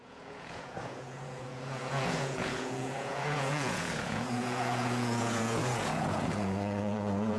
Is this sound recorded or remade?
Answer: remade